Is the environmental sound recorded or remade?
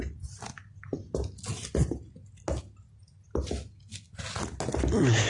recorded